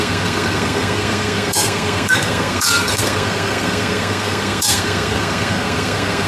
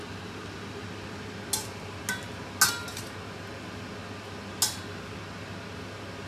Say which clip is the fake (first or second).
first